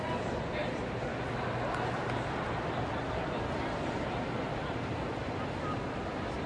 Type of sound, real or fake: real